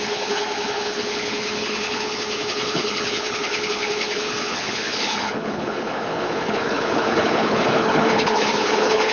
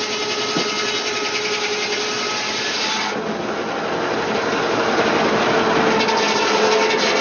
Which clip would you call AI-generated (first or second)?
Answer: first